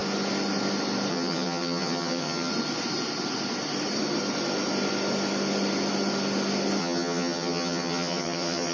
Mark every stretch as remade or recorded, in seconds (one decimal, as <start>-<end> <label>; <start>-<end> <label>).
0.0-1.1 recorded; 1.1-2.5 remade; 2.5-6.8 recorded; 6.8-8.7 remade